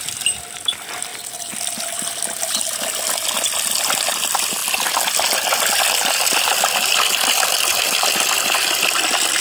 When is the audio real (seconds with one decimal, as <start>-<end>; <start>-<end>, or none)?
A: 1.1-3.8; 4.6-5.7